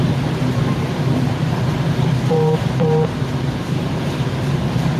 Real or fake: fake